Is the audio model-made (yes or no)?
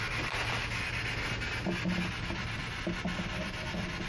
no